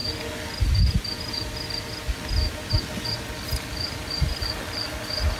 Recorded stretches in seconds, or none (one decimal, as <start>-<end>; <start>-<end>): 0.0-5.4